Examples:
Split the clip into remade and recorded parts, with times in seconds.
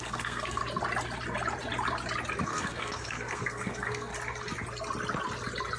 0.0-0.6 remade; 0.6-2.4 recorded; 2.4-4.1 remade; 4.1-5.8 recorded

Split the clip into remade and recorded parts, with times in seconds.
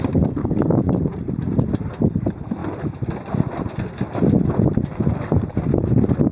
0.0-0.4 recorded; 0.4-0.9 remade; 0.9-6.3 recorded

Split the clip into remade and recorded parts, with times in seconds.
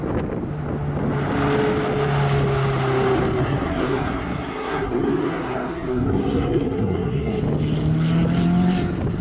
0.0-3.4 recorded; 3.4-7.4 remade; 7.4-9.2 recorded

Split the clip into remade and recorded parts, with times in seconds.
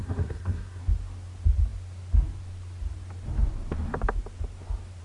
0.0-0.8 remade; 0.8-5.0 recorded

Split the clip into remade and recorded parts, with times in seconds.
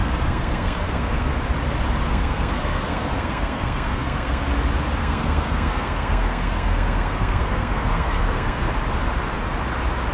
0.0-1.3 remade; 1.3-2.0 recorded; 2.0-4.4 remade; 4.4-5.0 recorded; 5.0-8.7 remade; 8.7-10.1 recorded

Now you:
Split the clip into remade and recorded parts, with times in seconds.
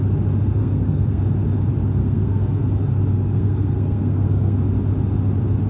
0.0-0.6 recorded; 0.6-1.2 remade; 1.2-2.0 recorded; 2.0-2.7 remade; 2.7-3.1 recorded; 3.1-4.6 remade; 4.6-5.7 recorded